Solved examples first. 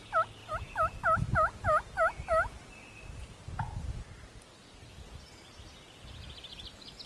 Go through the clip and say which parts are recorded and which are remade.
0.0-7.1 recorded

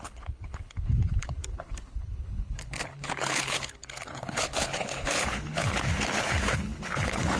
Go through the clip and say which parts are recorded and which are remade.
0.0-7.4 remade

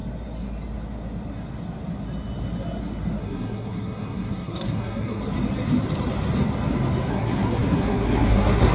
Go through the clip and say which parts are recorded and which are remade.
0.0-3.2 recorded; 3.2-5.2 remade; 5.2-7.1 recorded; 7.1-8.7 remade

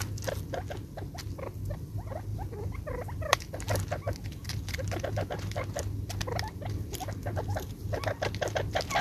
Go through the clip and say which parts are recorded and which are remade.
0.0-9.0 recorded

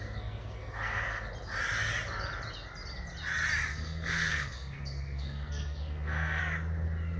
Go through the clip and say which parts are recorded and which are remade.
0.0-1.3 remade; 1.3-3.7 recorded; 3.7-6.4 remade; 6.4-7.2 recorded

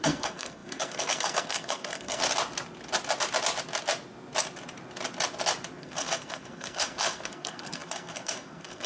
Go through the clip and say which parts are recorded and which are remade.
0.0-2.2 remade; 2.2-5.8 recorded; 5.8-8.9 remade

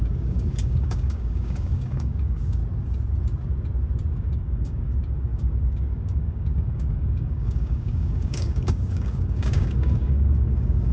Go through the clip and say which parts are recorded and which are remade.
0.0-2.6 remade; 2.6-4.1 recorded; 4.1-10.9 remade